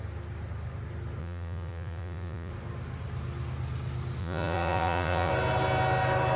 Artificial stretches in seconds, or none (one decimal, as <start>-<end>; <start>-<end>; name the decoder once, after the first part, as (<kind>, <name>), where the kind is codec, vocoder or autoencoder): 1.2-2.5 (vocoder, Vocos); 4.2-5.3